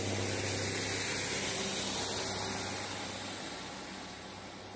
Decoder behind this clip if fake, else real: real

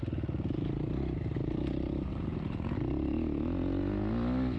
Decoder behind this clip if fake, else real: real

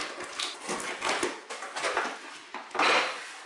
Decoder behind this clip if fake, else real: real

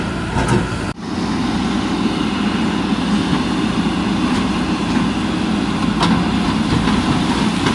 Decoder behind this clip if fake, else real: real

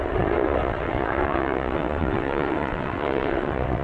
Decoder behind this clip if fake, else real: fake, vocoder, WaveNeXt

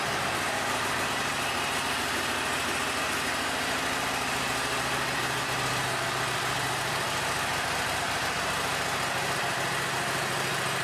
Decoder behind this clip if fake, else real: real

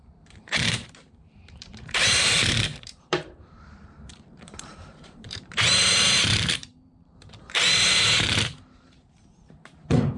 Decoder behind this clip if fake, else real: fake, vocoder, BigVGAN v2